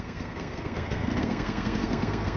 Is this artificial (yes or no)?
yes